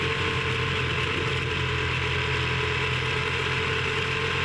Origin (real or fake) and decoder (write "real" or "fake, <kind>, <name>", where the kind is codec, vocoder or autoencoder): real